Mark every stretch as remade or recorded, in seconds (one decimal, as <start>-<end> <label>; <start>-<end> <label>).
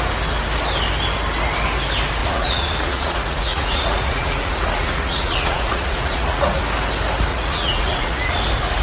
0.0-2.2 recorded; 2.2-6.6 remade; 6.6-7.3 recorded; 7.3-8.3 remade; 8.3-8.8 recorded